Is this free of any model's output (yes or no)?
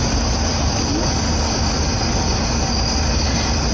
yes